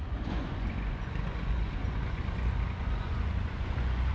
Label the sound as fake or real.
fake